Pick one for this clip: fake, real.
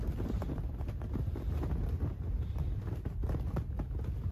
real